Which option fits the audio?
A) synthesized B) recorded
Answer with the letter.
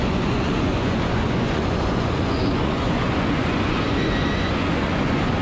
A